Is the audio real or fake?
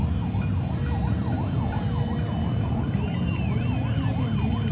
real